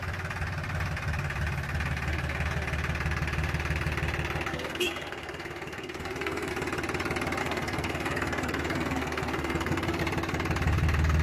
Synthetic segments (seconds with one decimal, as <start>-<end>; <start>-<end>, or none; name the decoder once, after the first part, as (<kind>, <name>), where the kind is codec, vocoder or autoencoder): 4.5-6.5 (codec, SNAC); 7.4-10.0